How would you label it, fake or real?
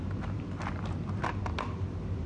real